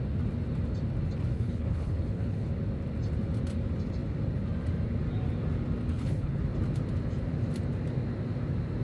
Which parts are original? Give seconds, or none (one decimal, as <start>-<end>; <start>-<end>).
0.0-1.3; 2.5-5.9; 6.4-8.8